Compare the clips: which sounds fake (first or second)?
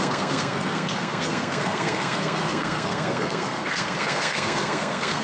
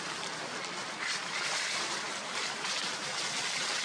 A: first